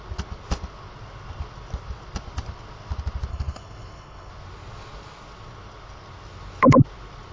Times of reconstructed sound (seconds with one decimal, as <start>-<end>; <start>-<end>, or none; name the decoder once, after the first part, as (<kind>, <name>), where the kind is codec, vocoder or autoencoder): 3.3-4.3 (codec, HILCodec)